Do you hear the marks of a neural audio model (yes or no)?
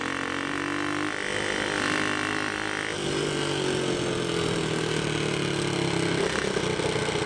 no